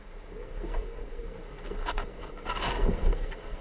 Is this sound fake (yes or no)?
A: yes